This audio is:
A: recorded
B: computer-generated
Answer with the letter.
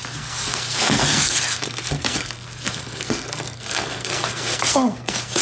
B